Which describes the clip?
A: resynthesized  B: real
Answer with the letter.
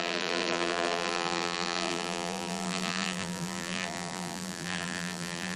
A